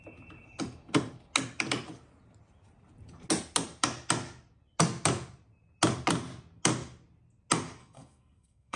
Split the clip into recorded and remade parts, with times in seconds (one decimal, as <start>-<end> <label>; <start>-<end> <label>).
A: 0.0-7.8 recorded; 7.8-8.8 remade